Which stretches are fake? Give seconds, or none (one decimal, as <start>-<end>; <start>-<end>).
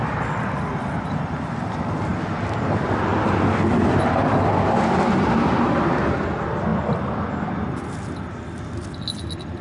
none